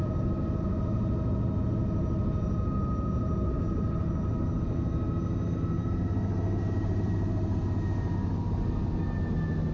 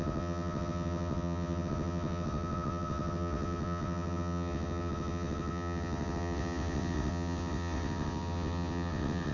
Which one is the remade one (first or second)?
second